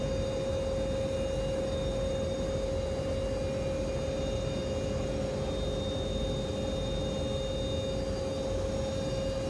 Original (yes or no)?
yes